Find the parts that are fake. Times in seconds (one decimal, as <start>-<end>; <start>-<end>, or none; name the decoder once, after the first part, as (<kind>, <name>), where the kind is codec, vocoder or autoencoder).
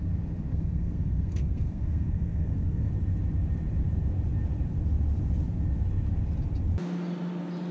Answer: 0.5-2.9 (codec, SNAC)